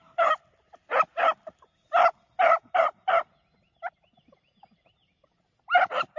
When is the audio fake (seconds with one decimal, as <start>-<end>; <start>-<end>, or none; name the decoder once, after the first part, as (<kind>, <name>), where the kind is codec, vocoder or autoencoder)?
none